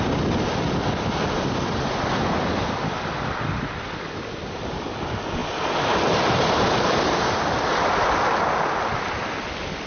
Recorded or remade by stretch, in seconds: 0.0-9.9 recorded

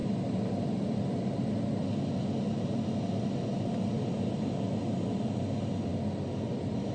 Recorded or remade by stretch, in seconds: 0.0-6.9 recorded

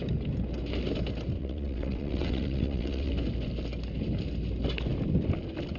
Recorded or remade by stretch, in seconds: 0.0-1.4 recorded; 1.4-3.1 remade; 3.1-5.8 recorded

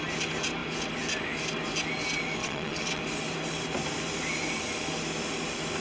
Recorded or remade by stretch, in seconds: 0.0-2.4 recorded; 2.4-3.0 remade; 3.0-5.8 recorded